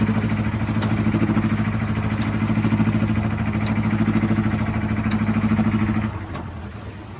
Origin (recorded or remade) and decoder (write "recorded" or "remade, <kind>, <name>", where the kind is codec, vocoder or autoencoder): recorded